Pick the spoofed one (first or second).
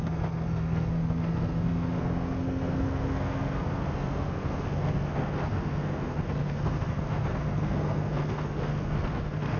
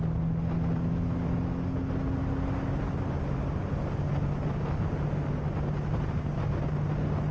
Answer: first